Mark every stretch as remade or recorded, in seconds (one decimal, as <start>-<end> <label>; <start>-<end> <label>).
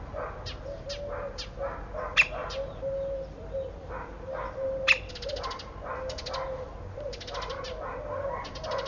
0.0-2.4 recorded; 2.4-5.1 remade; 5.1-8.9 recorded